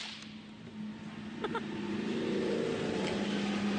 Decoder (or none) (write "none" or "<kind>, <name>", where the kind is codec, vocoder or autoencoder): none